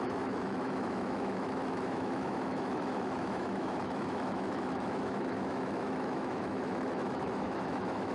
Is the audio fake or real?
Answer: fake